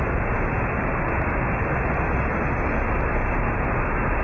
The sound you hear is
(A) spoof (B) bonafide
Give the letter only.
B